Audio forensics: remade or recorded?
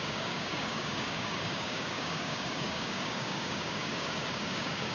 remade